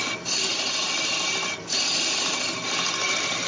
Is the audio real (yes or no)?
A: yes